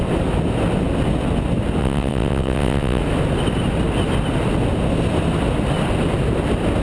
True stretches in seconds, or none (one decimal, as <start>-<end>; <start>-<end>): 0.0-1.8; 3.0-6.8